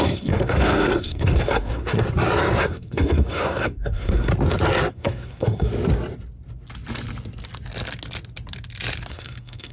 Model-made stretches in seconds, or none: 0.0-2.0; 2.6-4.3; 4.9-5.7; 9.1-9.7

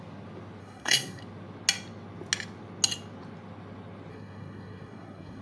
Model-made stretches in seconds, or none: 0.6-1.2; 4.1-5.4

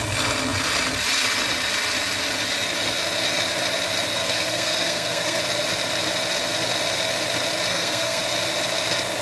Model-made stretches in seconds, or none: 4.1-5.4; 7.7-8.2

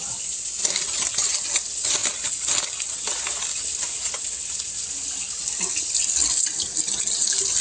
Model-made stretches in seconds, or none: none

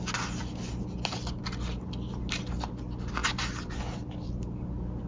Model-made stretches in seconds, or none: none

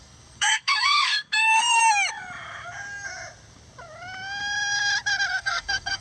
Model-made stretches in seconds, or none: 0.0-1.8; 5.3-6.0